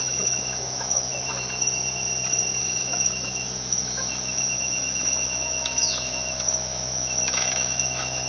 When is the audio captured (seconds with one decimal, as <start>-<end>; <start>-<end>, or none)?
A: 1.1-2.6